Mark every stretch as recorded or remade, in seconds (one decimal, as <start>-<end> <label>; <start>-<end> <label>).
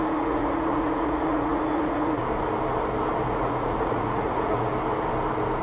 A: 0.0-2.2 remade; 2.2-3.3 recorded; 3.3-4.7 remade; 4.7-5.6 recorded